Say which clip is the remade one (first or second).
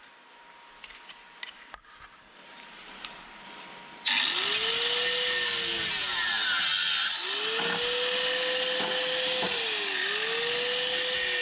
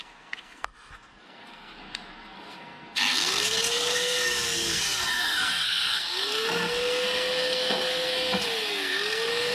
second